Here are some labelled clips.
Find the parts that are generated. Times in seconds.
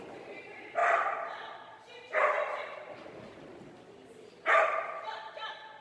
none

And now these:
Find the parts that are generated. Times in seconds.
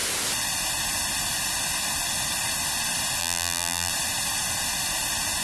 3.2-3.9